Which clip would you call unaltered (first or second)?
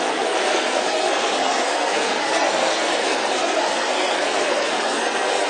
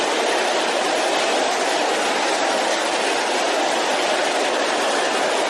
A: second